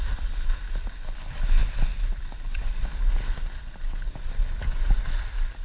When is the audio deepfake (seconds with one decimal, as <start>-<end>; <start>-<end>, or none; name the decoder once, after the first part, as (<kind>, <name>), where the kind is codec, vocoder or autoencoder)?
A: none